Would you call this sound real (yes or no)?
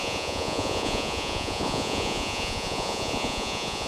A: no